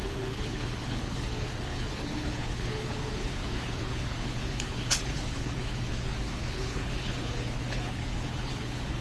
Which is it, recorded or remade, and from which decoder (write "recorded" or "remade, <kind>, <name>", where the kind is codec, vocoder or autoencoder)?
remade, codec, HILCodec